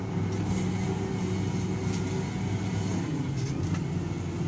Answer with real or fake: real